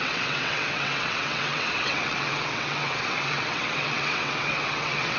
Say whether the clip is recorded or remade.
remade